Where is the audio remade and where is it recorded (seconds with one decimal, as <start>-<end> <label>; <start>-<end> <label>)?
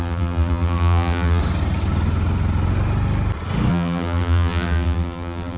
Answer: 0.0-1.4 remade; 1.4-3.7 recorded; 3.7-5.6 remade